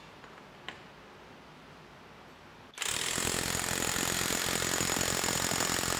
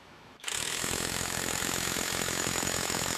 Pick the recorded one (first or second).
first